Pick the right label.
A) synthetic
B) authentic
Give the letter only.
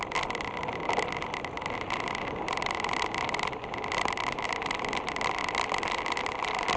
B